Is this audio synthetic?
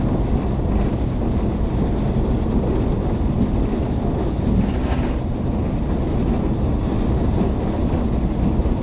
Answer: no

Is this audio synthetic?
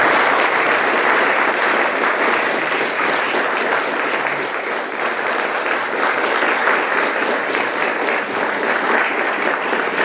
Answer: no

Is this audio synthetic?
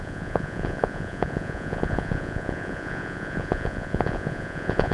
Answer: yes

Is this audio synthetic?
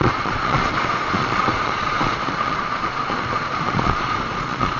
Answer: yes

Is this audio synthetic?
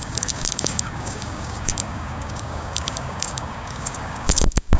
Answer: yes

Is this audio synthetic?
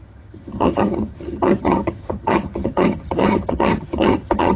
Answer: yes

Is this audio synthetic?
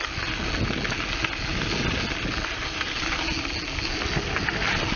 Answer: no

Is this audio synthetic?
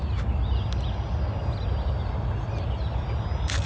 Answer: no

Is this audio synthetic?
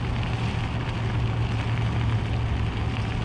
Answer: no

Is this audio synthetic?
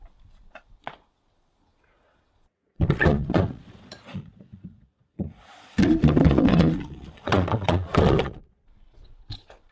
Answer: yes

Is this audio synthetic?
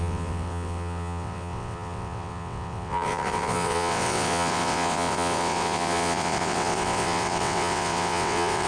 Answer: yes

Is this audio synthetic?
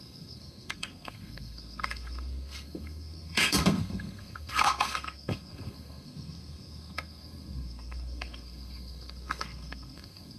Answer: yes